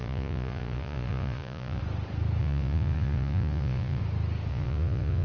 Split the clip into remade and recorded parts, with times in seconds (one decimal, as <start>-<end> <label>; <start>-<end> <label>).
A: 0.0-1.8 remade; 1.8-2.4 recorded; 2.4-4.0 remade; 4.0-4.5 recorded; 4.5-5.2 remade